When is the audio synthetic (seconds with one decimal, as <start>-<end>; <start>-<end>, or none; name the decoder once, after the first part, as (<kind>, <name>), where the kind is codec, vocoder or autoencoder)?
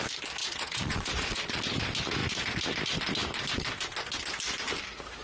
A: 0.4-1.6 (vocoder, Vocos)